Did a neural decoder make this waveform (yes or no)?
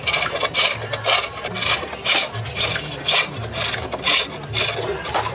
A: no